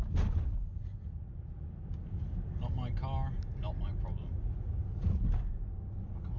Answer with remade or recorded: recorded